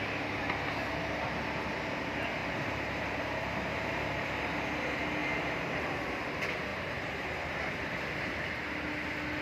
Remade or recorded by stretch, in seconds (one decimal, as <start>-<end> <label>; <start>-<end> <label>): 0.0-2.4 recorded; 2.4-4.0 remade; 4.0-6.7 recorded; 6.7-7.7 remade; 7.7-9.4 recorded